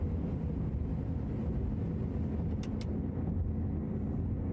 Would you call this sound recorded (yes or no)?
yes